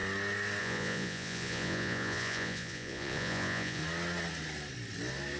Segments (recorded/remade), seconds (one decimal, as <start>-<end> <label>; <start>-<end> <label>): 0.0-0.6 recorded; 0.6-3.8 remade; 3.8-5.4 recorded